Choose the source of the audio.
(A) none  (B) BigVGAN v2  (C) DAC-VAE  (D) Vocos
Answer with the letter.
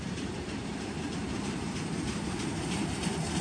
B